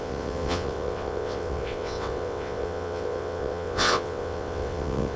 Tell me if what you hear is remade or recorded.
remade